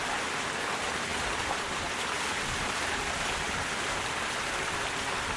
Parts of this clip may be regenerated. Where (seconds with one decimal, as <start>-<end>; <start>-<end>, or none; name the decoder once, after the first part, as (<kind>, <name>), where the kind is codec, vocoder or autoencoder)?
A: none